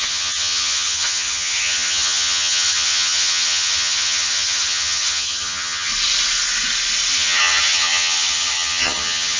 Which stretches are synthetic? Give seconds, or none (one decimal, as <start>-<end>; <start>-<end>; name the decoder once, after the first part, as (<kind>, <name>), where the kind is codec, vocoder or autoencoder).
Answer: 0.0-5.9 (vocoder, HiFi-GAN); 7.1-9.4